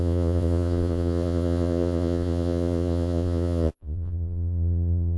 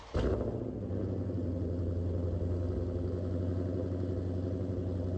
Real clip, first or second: second